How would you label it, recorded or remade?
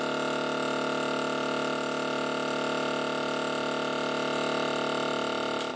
recorded